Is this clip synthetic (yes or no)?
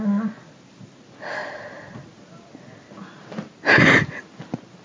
no